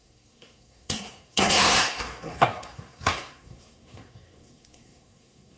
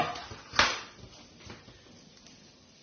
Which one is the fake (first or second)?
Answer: first